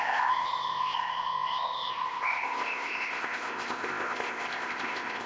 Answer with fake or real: fake